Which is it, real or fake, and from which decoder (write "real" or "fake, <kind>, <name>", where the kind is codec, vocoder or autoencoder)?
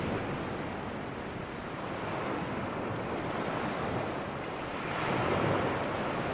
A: real